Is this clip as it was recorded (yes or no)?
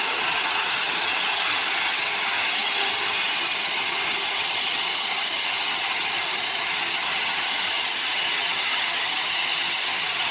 no